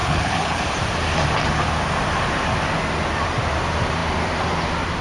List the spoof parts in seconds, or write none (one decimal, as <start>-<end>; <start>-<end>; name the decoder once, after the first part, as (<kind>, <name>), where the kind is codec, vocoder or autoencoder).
0.0-0.6 (codec, HILCodec)